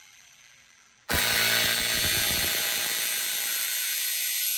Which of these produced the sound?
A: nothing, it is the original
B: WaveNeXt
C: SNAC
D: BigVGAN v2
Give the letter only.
D